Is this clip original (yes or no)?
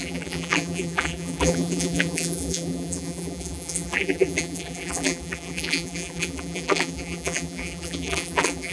no